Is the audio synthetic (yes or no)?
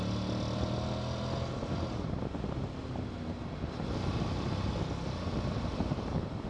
no